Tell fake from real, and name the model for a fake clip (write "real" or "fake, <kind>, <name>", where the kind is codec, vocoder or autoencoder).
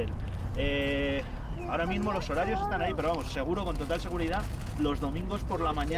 real